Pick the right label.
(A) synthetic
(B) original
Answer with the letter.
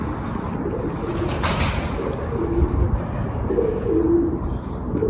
B